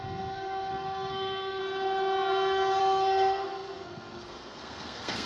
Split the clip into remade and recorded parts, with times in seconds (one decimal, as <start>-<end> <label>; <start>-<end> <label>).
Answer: 0.0-1.6 remade; 1.6-2.8 recorded; 2.8-5.3 remade